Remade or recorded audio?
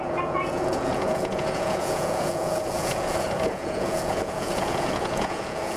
remade